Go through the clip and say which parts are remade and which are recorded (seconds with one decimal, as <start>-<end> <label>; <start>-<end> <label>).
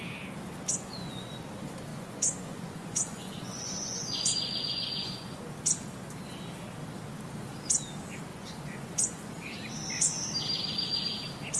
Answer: 0.0-0.7 recorded; 0.7-1.3 remade; 1.3-1.9 recorded; 1.9-5.4 remade; 5.4-8.3 recorded; 8.3-9.3 remade; 9.3-11.6 recorded